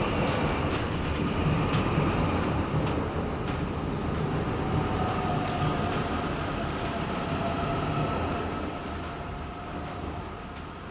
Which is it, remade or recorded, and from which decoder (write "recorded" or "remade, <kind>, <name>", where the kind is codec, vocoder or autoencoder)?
recorded